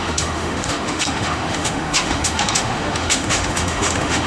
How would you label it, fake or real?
fake